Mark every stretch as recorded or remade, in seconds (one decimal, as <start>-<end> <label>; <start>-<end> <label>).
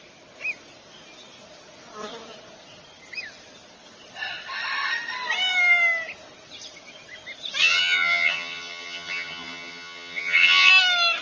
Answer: 0.0-7.6 recorded; 7.6-10.7 remade; 10.7-11.2 recorded